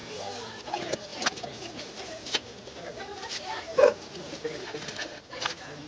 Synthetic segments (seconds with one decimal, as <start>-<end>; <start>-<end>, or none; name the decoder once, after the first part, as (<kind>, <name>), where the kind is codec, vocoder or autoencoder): 4.6-5.2 (autoencoder, DAC-VAE)